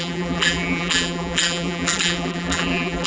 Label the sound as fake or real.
fake